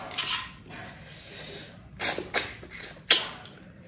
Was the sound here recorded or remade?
recorded